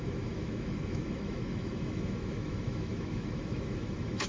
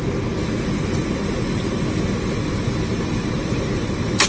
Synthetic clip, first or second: first